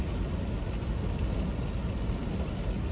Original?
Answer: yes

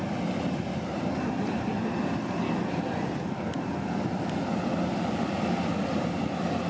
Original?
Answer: yes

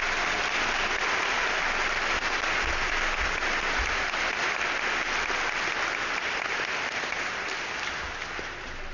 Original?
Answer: yes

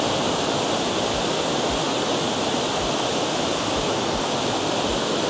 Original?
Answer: yes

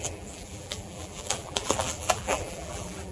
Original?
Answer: no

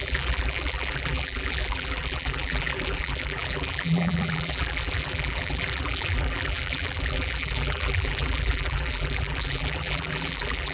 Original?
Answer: no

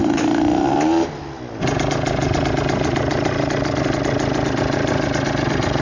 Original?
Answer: yes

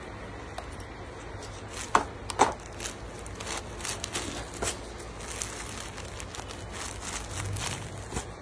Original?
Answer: yes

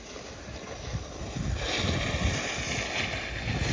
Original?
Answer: yes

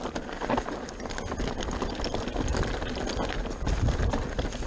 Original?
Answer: yes